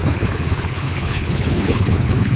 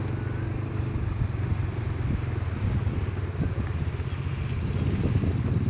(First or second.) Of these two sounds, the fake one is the first